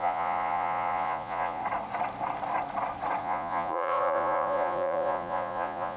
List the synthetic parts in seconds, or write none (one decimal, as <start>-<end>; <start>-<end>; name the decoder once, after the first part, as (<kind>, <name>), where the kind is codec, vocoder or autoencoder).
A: 0.0-1.6 (vocoder, Vocos); 3.2-6.0